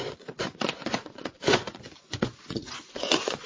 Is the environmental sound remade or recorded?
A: remade